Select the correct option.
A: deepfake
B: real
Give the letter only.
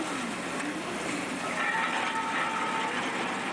B